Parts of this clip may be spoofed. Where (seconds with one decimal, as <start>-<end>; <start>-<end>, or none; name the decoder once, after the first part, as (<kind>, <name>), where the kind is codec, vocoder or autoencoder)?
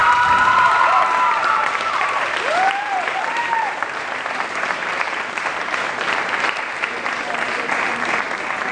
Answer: 0.0-8.7 (vocoder, BigVGAN v2)